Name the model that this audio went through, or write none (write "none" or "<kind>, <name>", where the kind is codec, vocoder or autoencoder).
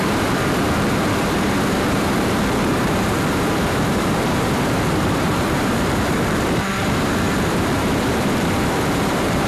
vocoder, BigVGAN v2